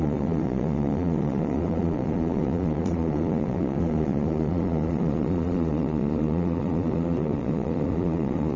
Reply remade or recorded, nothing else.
remade